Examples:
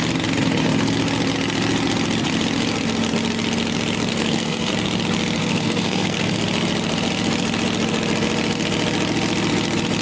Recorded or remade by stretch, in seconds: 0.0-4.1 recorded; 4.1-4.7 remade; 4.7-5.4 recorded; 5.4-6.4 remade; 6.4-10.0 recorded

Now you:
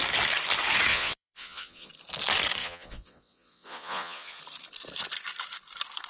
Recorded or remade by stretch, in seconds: 0.0-0.9 recorded; 0.9-1.9 remade; 1.9-2.6 recorded; 2.6-4.4 remade; 4.4-6.1 recorded

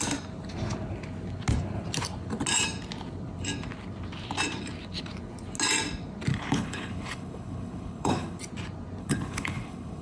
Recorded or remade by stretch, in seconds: 0.0-6.3 recorded; 6.3-8.4 remade; 8.4-9.0 recorded; 9.0-10.0 remade

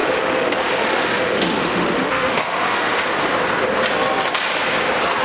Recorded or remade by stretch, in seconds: 0.0-3.1 remade; 3.1-5.2 recorded

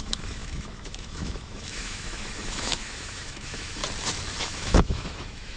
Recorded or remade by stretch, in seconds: 0.0-3.8 remade; 3.8-4.4 recorded; 4.4-5.6 remade

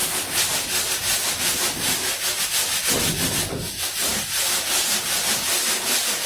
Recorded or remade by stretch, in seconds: 0.0-6.3 recorded

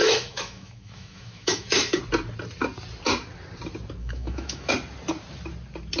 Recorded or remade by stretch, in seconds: 0.0-2.0 remade; 2.0-4.0 recorded; 4.0-4.7 remade; 4.7-6.0 recorded

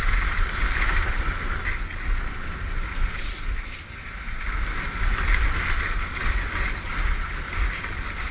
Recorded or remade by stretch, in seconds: 0.0-8.3 recorded